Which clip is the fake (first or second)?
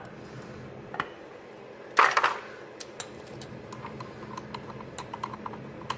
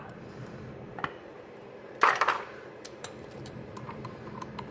second